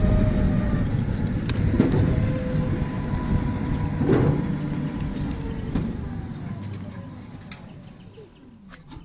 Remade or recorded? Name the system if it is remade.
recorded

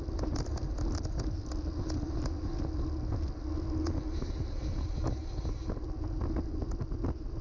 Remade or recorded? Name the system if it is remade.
recorded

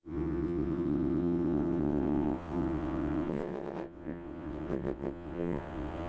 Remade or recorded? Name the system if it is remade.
remade, vocoder, WaveNeXt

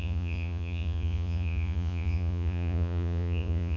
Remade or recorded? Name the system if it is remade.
remade, vocoder, Vocos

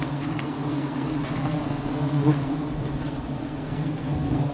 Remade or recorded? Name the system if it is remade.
remade, codec, SNAC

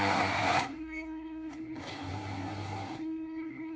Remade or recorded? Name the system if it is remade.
remade, codec, SNAC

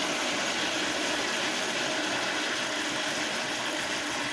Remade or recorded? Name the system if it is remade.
recorded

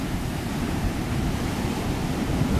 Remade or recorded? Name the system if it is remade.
remade, vocoder, BigVGAN v2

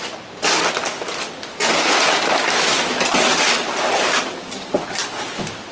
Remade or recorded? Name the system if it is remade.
recorded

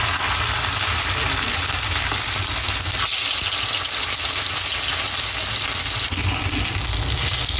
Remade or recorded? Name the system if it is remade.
recorded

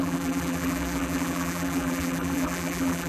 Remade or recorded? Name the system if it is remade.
remade, vocoder, BigVGAN v2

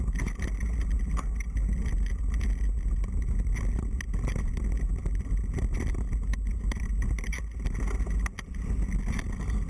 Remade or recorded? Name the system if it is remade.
recorded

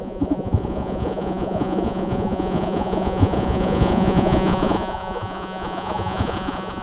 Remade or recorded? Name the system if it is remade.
remade, vocoder, Vocos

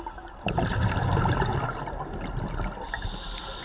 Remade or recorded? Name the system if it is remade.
recorded